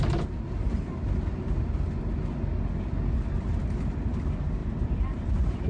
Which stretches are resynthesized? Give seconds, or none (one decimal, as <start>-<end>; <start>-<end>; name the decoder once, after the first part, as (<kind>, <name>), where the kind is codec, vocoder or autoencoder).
4.6-5.7 (vocoder, BigVGAN v2)